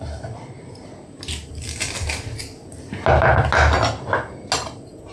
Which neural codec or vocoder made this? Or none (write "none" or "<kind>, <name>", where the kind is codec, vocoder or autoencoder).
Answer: none